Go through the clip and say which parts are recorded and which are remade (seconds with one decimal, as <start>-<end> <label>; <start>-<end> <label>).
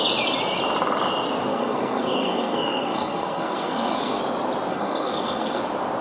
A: 0.0-1.5 recorded; 1.5-4.2 remade; 4.2-4.7 recorded; 4.7-5.6 remade; 5.6-6.0 recorded